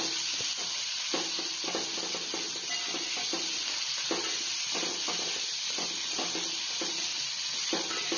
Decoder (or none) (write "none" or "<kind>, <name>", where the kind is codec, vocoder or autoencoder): none